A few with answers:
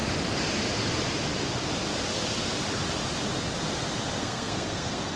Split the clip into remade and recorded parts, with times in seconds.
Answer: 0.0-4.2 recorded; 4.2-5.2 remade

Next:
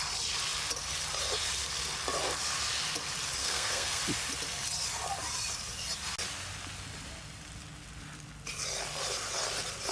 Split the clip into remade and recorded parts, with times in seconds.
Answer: 0.0-3.4 recorded; 3.4-4.0 remade; 4.0-9.9 recorded

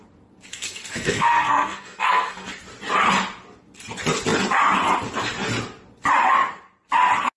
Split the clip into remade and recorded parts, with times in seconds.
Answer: 0.0-0.5 recorded; 0.5-2.5 remade; 2.5-7.4 recorded